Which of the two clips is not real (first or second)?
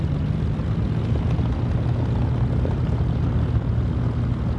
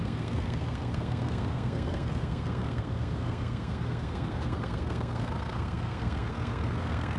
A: second